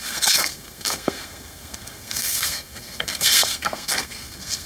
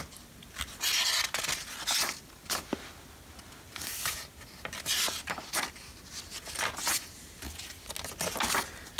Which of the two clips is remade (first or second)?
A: first